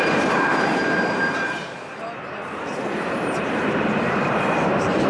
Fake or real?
fake